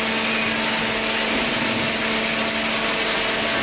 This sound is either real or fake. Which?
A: real